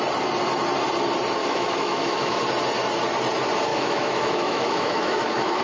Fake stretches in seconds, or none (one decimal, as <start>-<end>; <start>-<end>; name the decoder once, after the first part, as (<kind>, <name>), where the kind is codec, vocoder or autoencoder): 1.4-2.4 (autoencoder, DAC-VAE); 3.7-5.6